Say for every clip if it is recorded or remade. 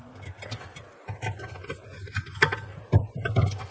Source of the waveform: recorded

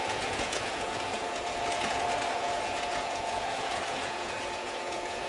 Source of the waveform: remade